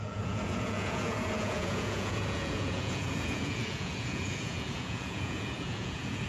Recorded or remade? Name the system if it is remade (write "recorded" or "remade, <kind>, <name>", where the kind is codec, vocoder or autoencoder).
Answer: remade, vocoder, Vocos